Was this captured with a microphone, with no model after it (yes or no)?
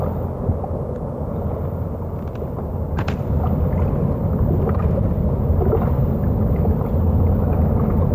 yes